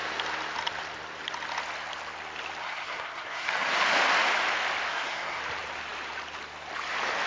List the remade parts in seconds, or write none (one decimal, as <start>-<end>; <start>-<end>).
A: 2.6-3.5; 4.9-5.4